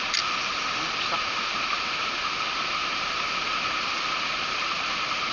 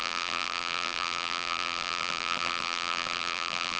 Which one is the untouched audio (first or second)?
first